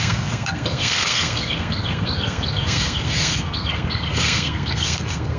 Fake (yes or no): yes